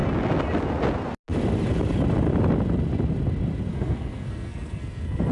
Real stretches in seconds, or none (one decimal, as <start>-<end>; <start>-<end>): 0.0-3.7

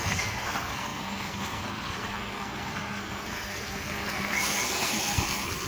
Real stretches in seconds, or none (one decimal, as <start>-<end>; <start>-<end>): none

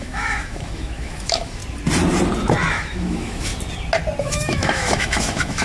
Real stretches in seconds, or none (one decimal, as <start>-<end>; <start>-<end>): 1.6-2.7; 3.5-4.2

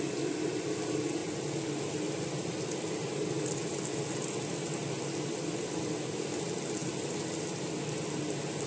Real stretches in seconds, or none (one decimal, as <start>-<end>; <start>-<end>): 0.0-8.7

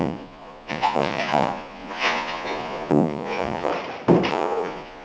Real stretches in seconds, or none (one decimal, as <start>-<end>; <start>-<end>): 3.7-4.3

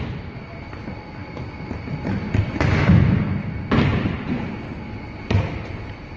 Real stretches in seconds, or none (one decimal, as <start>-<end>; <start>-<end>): 0.0-6.2

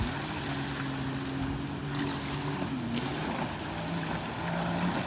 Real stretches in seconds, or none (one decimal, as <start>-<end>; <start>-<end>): 0.0-5.1

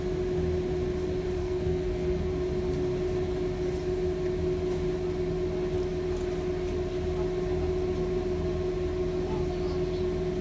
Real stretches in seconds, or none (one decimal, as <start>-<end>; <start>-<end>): 0.0-1.4; 2.3-10.4